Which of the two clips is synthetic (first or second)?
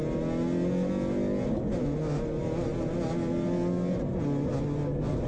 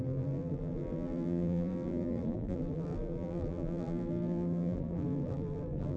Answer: second